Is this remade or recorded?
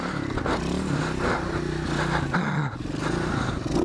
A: recorded